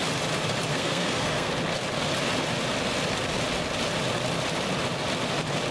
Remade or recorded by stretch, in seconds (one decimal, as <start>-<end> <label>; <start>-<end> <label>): 0.0-0.7 recorded; 0.7-1.5 remade; 1.5-5.7 recorded